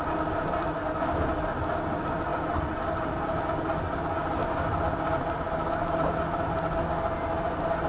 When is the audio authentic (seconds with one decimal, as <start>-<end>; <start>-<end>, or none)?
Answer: 0.0-7.9